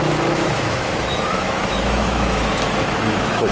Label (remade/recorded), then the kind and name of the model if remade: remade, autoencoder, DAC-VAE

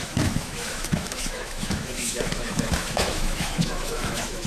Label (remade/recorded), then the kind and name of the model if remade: remade, autoencoder, DAC-VAE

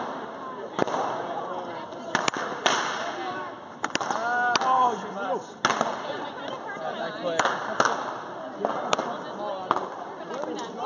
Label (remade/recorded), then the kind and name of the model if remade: recorded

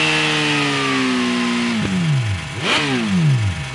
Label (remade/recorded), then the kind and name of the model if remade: recorded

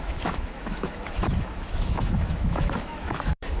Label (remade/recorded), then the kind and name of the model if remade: remade, autoencoder, DAC-VAE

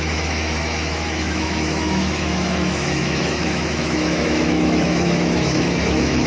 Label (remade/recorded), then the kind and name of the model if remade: remade, autoencoder, DAC-VAE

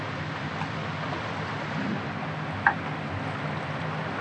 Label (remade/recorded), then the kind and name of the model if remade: recorded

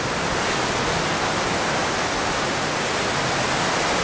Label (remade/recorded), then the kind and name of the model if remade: recorded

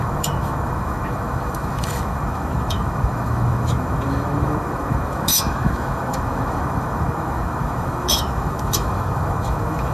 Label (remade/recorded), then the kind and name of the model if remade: remade, autoencoder, DAC-VAE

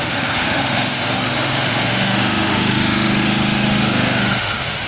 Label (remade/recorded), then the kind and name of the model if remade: remade, autoencoder, DAC-VAE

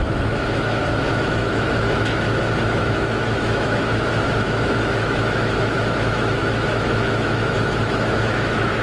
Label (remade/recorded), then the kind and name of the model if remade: remade, autoencoder, DAC-VAE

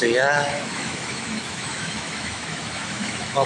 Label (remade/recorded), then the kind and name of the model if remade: remade, autoencoder, DAC-VAE